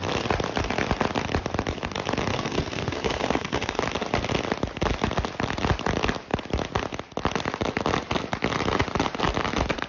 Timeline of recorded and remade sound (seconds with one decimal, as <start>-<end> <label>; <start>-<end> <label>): 0.0-2.3 recorded; 2.3-3.8 remade; 3.8-9.9 recorded